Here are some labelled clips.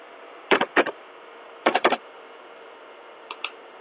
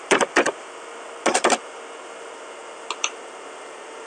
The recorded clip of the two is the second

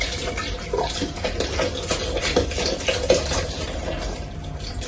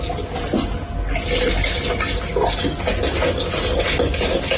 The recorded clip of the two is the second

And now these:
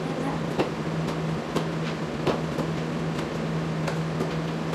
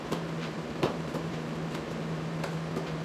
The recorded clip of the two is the first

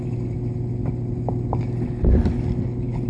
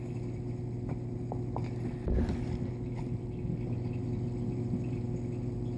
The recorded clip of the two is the second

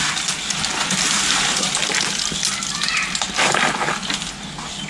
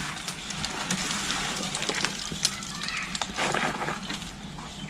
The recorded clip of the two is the first